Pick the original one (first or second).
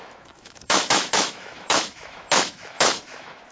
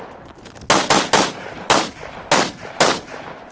second